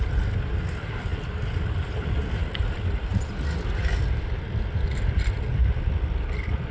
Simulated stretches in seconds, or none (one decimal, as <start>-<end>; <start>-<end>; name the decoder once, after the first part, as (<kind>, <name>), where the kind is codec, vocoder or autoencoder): none